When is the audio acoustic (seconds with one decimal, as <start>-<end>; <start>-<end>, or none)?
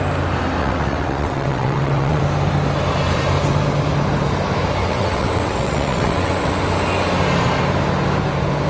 0.0-0.6; 2.2-4.8; 6.5-8.7